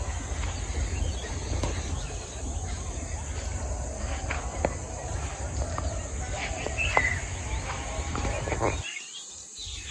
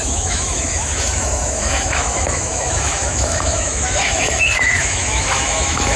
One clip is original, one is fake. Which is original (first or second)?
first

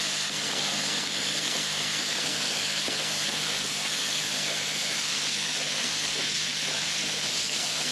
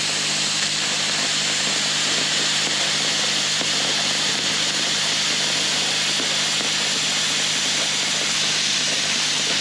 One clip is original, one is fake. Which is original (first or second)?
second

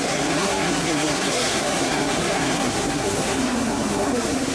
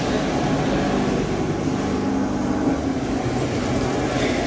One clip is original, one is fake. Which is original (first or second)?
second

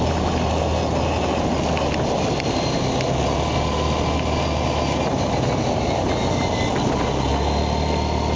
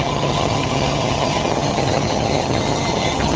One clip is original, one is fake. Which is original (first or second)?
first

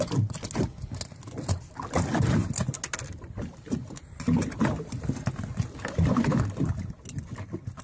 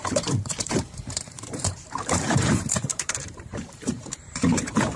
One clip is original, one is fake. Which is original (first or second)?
first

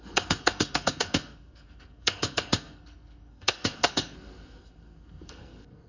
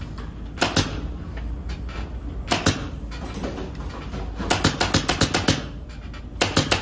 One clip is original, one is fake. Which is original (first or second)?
second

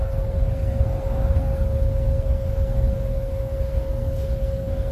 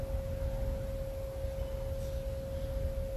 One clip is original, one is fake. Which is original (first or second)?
second